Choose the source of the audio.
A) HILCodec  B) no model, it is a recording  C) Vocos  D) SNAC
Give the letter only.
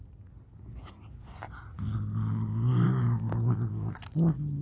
B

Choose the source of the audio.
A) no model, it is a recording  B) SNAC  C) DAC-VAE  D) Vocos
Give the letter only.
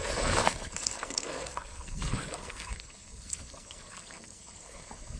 B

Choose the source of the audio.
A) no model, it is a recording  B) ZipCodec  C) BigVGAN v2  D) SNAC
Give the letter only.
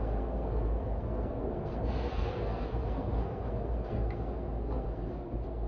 D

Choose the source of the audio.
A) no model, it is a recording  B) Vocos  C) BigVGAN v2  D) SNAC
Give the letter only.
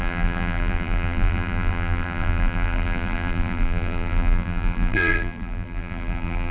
C